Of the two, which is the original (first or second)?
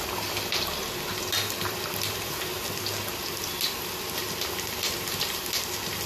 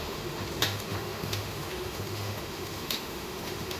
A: first